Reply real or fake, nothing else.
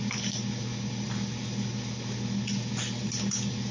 real